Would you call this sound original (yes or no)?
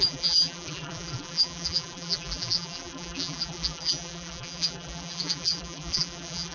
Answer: no